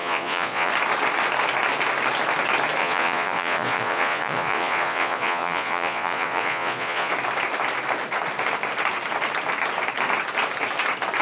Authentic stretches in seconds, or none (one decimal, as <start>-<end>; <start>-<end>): 0.7-2.8; 7.1-11.2